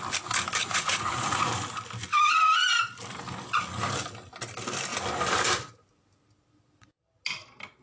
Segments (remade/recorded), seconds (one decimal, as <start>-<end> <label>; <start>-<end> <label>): 0.0-0.6 recorded; 0.6-1.5 remade; 1.5-7.8 recorded